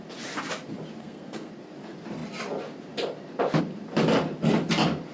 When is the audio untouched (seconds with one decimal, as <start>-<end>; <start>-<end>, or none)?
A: 0.0-1.0; 1.5-5.1